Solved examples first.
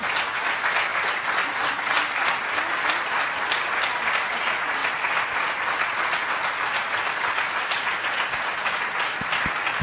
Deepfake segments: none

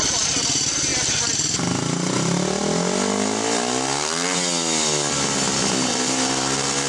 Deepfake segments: 5.9-6.9

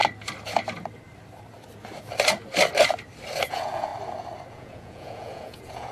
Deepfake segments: 3.5-3.9; 4.5-5.9

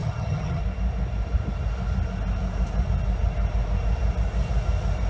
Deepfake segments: 0.0-0.6

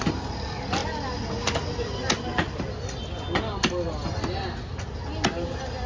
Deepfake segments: none

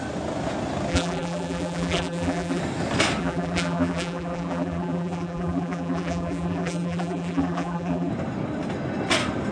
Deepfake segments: 0.9-2.6; 3.2-8.1

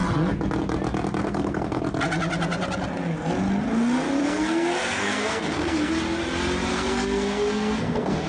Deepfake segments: 1.2-1.8; 4.2-5.9; 6.7-8.3

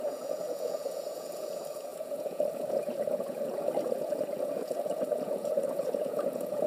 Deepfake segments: 0.0-6.7